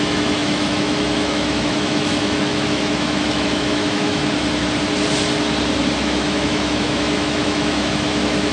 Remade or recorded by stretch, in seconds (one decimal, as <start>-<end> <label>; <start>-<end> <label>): 0.0-4.2 remade; 4.2-6.0 recorded; 6.0-8.5 remade